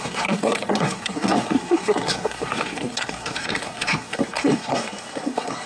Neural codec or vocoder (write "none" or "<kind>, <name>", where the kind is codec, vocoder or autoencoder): codec, SNAC